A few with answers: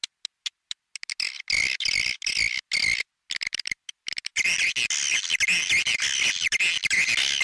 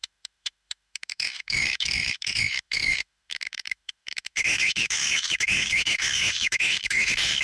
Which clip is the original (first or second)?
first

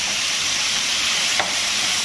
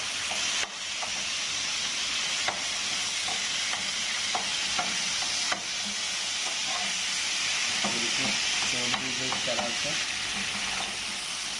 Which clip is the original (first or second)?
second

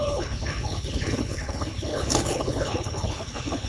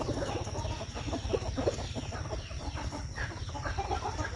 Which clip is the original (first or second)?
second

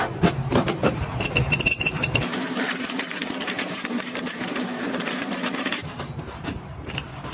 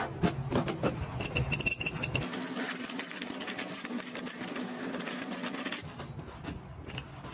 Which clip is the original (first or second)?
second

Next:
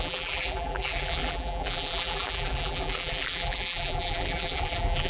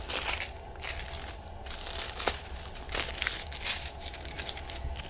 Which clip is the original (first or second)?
second